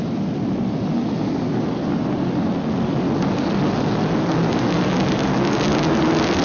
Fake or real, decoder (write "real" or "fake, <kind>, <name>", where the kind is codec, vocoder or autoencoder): real